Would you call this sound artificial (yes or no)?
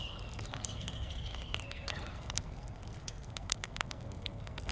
yes